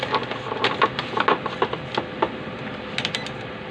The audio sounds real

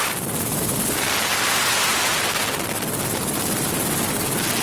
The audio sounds real